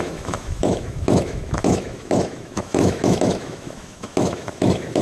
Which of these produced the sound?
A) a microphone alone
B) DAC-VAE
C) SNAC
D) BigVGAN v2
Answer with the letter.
B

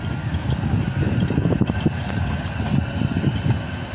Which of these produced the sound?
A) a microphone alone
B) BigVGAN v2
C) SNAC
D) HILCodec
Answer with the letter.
A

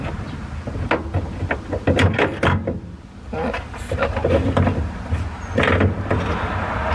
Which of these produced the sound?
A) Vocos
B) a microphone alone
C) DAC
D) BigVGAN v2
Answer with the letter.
B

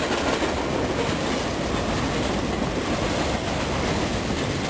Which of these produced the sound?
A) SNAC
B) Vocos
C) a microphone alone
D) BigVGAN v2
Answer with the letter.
C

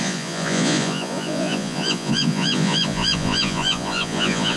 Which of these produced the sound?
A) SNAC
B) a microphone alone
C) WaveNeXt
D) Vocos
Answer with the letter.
D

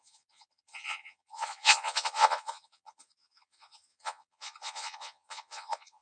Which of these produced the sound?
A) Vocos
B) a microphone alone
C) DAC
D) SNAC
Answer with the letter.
A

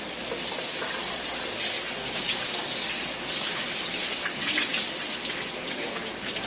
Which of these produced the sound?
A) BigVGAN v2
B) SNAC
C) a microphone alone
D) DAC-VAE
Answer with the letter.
C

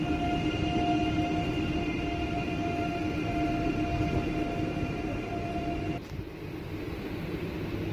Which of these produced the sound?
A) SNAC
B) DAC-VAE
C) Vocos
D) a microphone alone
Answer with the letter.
D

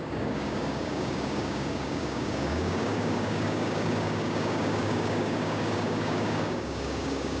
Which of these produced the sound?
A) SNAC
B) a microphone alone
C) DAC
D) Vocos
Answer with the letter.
C